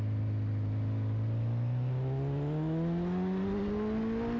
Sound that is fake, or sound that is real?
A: real